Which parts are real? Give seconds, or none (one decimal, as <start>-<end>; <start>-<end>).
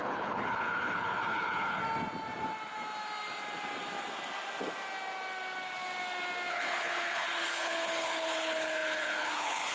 1.8-6.5